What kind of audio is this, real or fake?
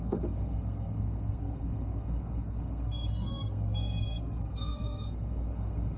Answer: fake